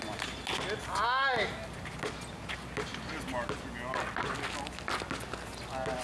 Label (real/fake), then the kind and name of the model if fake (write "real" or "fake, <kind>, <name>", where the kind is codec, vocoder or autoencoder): real